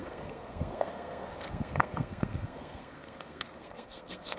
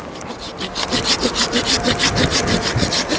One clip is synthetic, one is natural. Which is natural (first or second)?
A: second